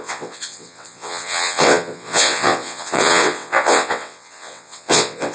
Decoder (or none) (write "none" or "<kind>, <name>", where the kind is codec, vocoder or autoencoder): vocoder, WaveNeXt